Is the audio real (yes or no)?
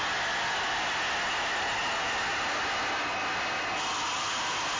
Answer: yes